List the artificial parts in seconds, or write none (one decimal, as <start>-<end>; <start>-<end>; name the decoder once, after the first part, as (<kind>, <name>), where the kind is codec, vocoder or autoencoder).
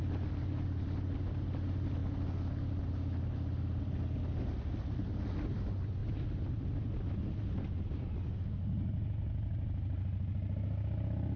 none